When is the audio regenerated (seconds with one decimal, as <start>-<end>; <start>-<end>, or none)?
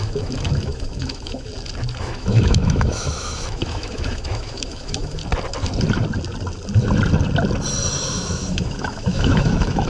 0.0-1.5; 2.0-5.2; 7.9-9.9